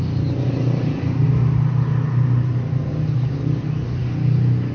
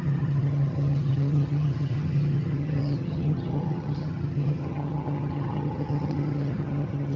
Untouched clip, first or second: first